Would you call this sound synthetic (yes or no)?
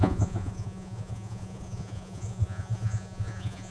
yes